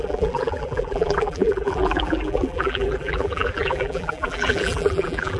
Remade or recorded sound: remade